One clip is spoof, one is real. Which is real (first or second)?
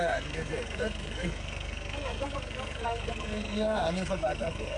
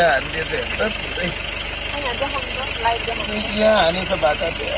second